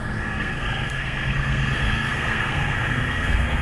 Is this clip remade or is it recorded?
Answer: remade